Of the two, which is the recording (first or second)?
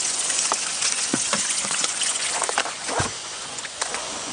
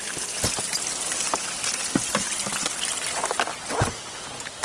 second